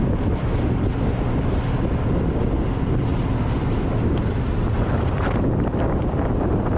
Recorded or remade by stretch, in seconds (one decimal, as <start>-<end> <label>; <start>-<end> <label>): 0.0-6.8 recorded